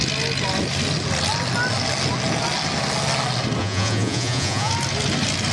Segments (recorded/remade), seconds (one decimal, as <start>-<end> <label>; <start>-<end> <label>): 0.0-3.6 recorded; 3.6-4.7 remade; 4.7-5.5 recorded